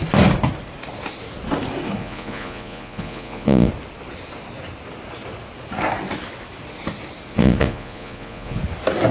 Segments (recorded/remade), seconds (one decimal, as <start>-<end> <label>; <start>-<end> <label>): 0.0-2.0 recorded; 2.0-3.7 remade; 3.7-7.3 recorded; 7.3-8.6 remade; 8.6-9.1 recorded

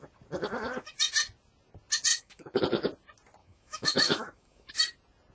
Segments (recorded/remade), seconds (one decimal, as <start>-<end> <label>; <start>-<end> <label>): 0.0-2.1 recorded; 2.1-2.6 remade; 2.6-3.4 recorded; 3.4-4.7 remade; 4.7-5.3 recorded

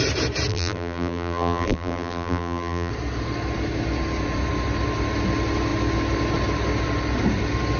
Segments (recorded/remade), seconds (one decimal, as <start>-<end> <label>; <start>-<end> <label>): 0.0-0.5 recorded; 0.5-2.9 remade; 2.9-7.8 recorded

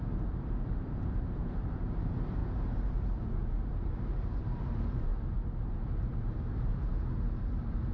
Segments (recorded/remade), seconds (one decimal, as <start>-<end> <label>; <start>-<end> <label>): 0.0-5.1 remade; 5.1-5.6 recorded; 5.6-6.7 remade; 6.7-7.3 recorded; 7.3-7.9 remade

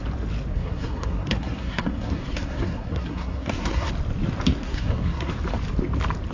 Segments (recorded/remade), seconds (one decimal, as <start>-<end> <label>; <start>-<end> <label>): 0.0-0.5 recorded; 0.5-3.9 remade; 3.9-4.6 recorded; 4.6-5.3 remade; 5.3-6.3 recorded

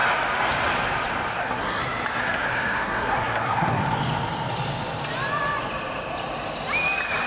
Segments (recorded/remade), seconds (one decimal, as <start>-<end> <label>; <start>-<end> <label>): 0.0-1.3 recorded; 1.3-1.8 remade; 1.8-2.2 recorded; 2.2-3.8 remade; 3.8-7.3 recorded

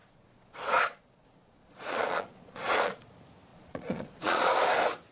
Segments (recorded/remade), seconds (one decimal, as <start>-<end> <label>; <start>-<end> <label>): 0.0-3.1 remade; 3.1-3.5 recorded; 3.5-4.5 remade; 4.5-5.1 recorded

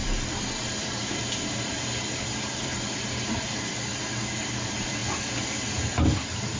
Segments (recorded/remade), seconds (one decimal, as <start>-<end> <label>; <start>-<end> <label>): 0.0-0.8 recorded; 0.8-5.0 remade; 5.0-5.7 recorded; 5.7-6.6 remade